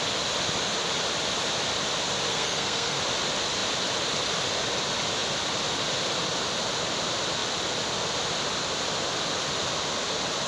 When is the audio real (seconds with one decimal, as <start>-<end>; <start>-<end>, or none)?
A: 0.0-2.3; 3.0-10.5